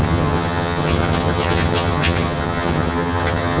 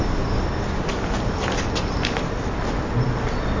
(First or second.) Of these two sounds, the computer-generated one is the first